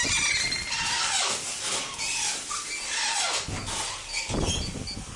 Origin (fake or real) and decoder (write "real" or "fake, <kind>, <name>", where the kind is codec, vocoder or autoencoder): real